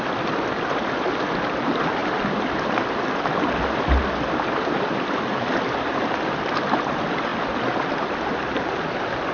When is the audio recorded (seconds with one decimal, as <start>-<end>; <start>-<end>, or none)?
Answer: 0.0-9.3